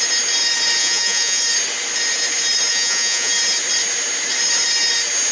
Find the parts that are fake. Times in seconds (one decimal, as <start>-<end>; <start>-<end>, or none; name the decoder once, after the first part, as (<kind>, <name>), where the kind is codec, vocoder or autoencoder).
0.8-1.4 (vocoder, Vocos); 2.7-3.3